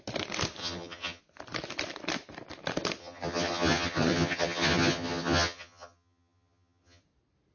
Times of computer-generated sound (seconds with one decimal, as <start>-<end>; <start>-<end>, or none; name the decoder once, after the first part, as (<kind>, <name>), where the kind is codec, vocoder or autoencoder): 0.6-1.2 (vocoder, HiFi-GAN); 3.0-7.0